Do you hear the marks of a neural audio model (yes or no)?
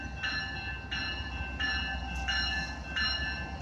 no